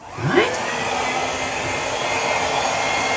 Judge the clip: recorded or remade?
recorded